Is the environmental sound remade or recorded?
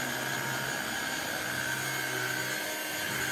recorded